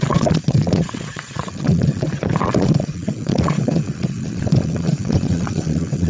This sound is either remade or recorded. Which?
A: remade